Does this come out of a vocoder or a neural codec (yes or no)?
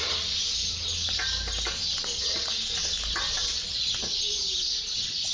no